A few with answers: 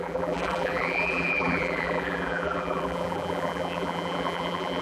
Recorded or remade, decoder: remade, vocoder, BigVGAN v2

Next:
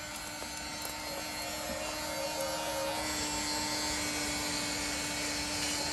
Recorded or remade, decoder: recorded